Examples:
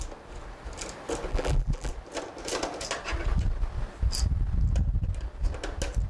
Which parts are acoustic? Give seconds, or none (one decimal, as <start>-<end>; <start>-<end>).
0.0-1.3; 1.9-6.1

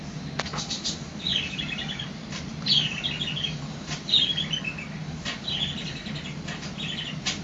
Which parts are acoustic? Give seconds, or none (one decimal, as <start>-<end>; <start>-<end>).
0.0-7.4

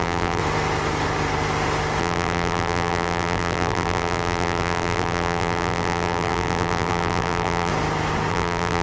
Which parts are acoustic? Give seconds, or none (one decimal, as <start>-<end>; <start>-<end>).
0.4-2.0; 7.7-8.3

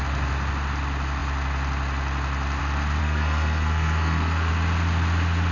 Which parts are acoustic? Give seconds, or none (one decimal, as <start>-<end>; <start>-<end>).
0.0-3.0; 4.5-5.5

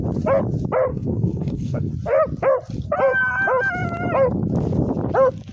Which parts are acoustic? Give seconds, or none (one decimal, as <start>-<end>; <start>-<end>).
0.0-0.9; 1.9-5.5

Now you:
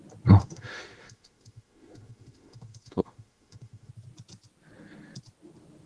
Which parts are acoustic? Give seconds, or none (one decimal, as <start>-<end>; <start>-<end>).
0.0-0.4; 3.9-5.9

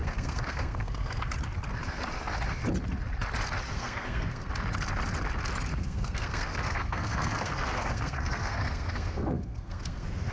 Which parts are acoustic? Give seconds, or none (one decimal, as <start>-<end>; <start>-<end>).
1.3-3.7; 4.5-5.7